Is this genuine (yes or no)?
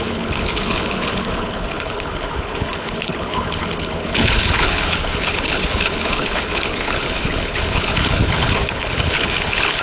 no